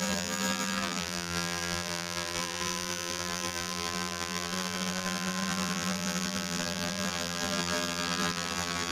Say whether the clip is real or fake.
fake